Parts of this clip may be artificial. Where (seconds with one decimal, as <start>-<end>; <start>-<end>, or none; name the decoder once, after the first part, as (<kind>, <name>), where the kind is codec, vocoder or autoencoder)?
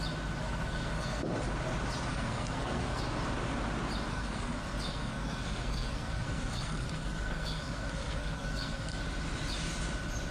0.4-1.2 (codec, SNAC); 2.1-3.0; 4.1-9.0